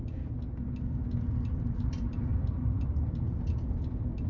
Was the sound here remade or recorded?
recorded